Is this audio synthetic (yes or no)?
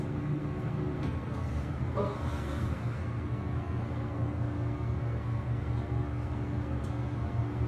yes